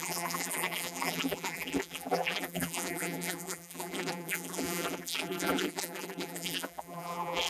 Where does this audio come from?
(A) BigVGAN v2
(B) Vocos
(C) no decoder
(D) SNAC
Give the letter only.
A